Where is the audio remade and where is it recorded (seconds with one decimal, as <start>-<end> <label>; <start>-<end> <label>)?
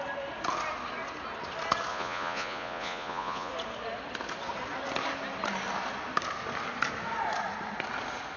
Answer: 0.0-1.9 recorded; 1.9-3.5 remade; 3.5-8.4 recorded